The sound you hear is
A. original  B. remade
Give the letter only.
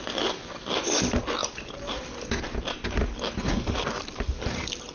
A